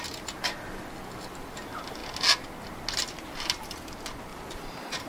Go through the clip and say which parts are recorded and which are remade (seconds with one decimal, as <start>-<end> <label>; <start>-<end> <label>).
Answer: 0.0-4.3 recorded; 4.3-5.1 remade